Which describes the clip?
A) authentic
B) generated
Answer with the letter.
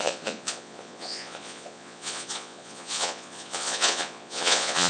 B